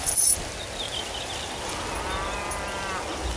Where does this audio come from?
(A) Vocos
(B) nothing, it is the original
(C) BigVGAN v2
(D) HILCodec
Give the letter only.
B